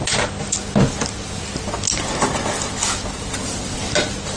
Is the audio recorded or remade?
recorded